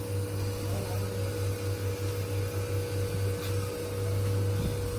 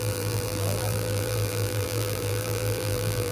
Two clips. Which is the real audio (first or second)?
first